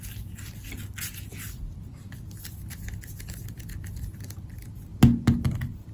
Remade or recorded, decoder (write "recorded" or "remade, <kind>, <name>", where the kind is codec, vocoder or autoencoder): recorded